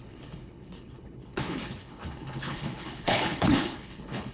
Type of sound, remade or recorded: remade